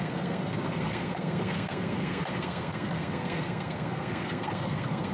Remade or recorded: remade